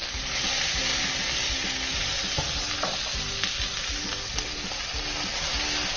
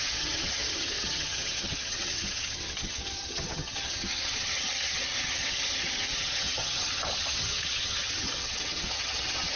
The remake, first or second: second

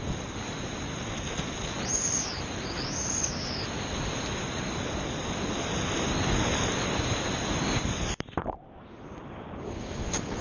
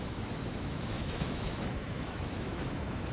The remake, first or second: second